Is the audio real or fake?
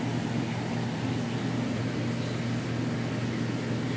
real